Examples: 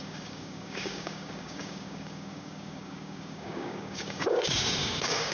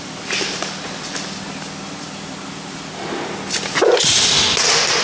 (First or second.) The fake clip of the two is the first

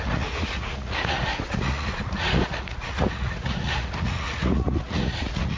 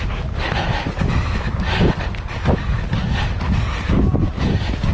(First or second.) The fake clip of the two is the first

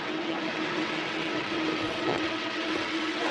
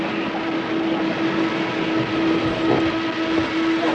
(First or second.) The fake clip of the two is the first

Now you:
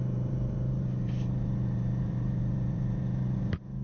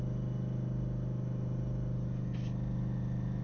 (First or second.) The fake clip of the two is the first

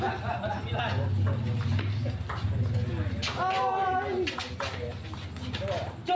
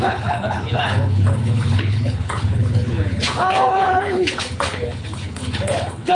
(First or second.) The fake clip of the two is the second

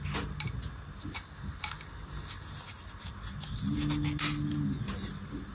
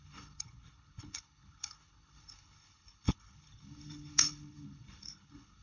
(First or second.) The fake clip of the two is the second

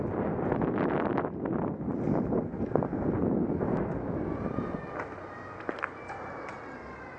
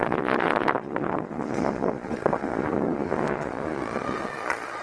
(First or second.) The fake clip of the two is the second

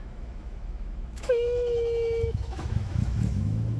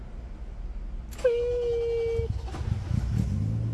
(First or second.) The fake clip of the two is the first